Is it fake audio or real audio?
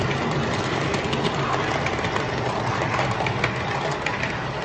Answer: real